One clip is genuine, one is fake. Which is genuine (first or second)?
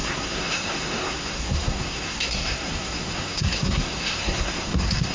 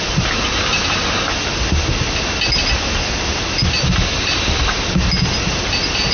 second